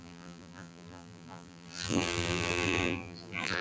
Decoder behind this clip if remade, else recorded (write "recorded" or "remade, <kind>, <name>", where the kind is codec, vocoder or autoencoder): remade, vocoder, BigVGAN v2